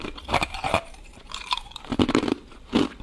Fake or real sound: fake